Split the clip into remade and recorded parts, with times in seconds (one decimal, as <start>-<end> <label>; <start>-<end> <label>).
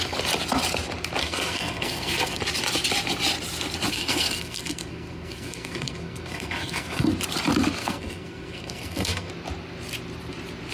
0.0-1.2 recorded; 1.2-2.4 remade; 2.4-3.9 recorded; 3.9-7.1 remade; 7.1-7.8 recorded; 7.8-9.3 remade; 9.3-10.7 recorded